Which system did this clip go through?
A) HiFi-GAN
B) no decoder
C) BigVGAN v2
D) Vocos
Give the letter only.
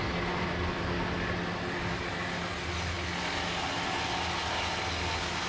B